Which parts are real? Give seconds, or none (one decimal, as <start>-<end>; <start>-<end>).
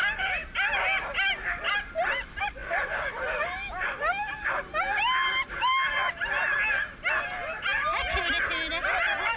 0.0-9.4